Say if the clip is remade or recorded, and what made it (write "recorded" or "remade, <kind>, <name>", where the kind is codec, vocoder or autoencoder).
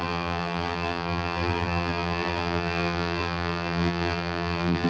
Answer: remade, vocoder, BigVGAN v2